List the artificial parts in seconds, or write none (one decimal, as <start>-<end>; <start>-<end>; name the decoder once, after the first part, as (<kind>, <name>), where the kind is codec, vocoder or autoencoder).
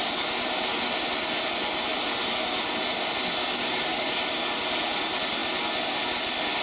3.4-4.1 (codec, DAC)